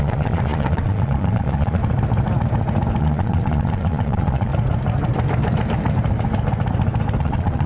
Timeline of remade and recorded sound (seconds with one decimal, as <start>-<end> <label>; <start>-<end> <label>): 0.0-1.8 remade; 1.8-3.0 recorded; 3.0-4.5 remade; 4.5-7.2 recorded; 7.2-7.7 remade